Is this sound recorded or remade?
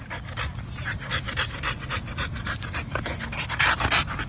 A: recorded